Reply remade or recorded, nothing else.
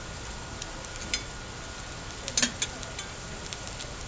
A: recorded